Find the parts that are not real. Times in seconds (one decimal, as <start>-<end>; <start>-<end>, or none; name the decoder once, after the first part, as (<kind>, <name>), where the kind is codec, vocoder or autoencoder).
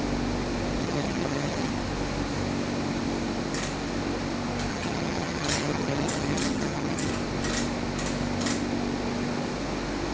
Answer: 0.8-1.7 (vocoder, HiFi-GAN); 4.7-7.1